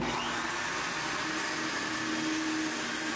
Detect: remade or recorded recorded